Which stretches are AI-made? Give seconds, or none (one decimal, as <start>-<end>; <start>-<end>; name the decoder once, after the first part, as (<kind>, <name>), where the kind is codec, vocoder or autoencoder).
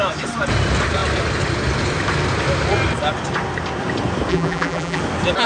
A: 4.3-5.0 (vocoder, BigVGAN v2)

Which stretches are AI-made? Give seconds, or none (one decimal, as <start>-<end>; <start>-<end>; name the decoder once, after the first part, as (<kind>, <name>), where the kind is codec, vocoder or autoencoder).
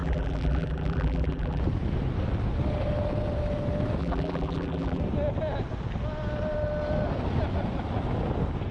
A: 0.0-1.6 (vocoder, BigVGAN v2); 4.0-5.0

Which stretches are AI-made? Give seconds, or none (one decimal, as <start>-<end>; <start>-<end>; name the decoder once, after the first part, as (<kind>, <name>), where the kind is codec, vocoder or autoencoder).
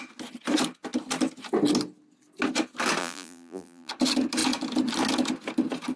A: 3.0-3.9 (vocoder, BigVGAN v2)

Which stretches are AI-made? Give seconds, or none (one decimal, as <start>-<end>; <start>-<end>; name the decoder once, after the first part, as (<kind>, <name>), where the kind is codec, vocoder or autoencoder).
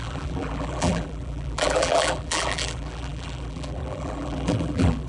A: 0.0-5.1 (vocoder, BigVGAN v2)